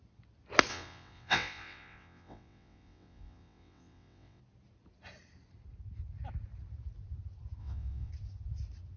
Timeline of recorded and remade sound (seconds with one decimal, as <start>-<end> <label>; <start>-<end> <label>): 0.0-0.7 recorded; 0.7-4.4 remade; 4.4-7.6 recorded; 7.6-8.1 remade; 8.1-9.0 recorded